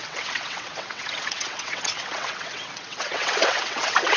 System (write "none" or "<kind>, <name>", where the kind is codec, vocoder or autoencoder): vocoder, WaveNeXt